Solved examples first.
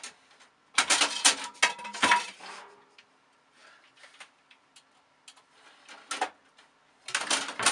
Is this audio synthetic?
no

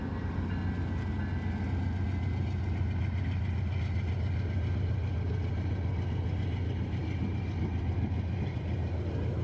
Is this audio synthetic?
no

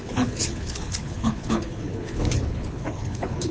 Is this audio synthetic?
yes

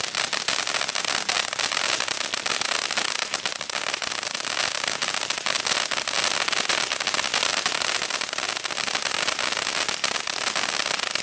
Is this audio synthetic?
no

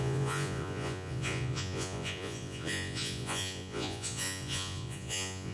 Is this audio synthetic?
yes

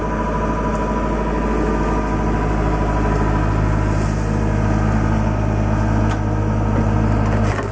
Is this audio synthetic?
no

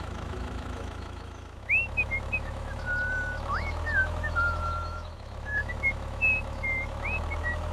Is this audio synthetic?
yes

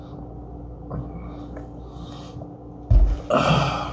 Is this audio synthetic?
no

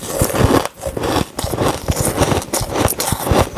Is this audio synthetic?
no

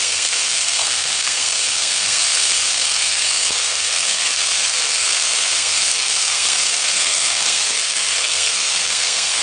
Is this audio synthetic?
yes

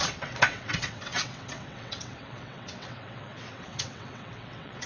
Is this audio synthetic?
yes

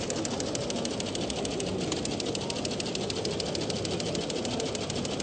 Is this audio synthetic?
no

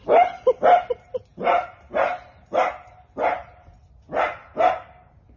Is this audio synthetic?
no